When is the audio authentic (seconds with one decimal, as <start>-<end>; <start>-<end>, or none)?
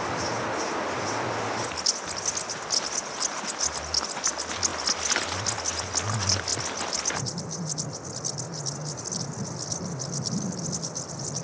0.0-11.4